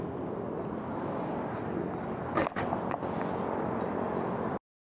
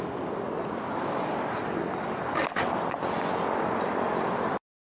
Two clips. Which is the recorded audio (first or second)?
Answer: first